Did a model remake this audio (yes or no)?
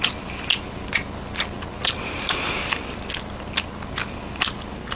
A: no